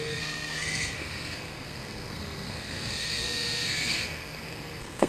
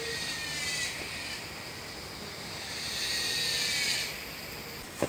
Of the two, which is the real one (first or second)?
second